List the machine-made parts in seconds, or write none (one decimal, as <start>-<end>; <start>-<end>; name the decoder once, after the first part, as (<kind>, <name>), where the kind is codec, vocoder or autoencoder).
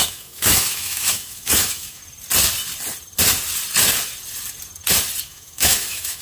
0.0-2.0 (autoencoder, DAC-VAE); 5.2-6.2